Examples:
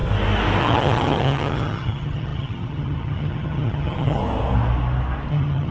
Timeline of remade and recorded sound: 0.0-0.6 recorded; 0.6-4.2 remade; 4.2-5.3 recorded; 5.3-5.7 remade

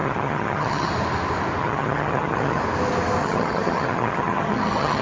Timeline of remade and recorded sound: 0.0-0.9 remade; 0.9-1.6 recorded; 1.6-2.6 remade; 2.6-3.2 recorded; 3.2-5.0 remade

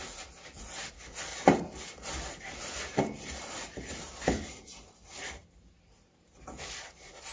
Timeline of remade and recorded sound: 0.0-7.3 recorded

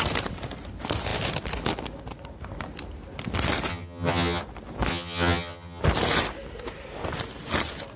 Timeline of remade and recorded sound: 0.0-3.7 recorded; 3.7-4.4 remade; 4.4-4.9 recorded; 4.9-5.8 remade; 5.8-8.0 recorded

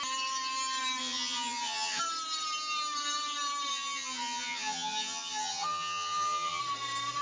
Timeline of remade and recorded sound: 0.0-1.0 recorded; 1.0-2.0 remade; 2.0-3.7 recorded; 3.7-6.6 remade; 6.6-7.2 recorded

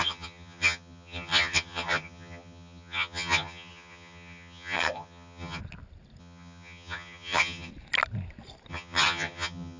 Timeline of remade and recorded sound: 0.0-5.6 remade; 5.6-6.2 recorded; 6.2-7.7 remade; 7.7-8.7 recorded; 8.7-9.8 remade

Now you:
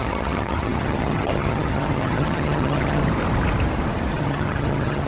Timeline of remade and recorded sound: 0.0-3.0 remade; 3.0-4.1 recorded; 4.1-5.1 remade